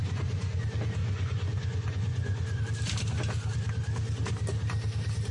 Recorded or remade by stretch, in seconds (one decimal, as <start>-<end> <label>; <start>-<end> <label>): 0.0-0.6 remade; 0.6-1.0 recorded; 1.0-2.6 remade; 2.6-5.3 recorded